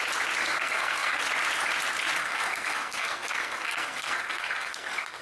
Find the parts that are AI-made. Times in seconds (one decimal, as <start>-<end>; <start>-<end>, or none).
0.4-1.2; 2.2-5.2